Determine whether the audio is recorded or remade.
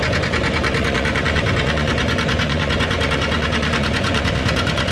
remade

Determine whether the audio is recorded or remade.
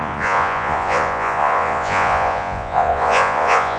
remade